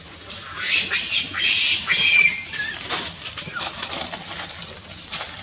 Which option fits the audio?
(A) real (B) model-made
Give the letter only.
A